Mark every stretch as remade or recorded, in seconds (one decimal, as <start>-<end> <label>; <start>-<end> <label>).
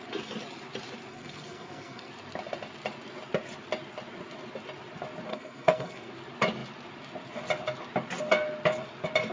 0.0-1.1 recorded; 1.1-2.1 remade; 2.1-5.3 recorded; 5.3-6.1 remade; 6.1-9.3 recorded